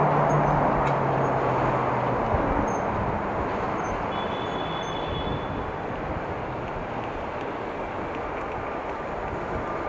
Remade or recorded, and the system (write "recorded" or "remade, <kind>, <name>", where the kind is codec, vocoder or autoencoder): recorded